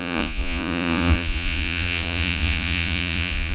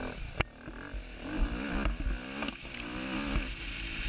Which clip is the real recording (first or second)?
second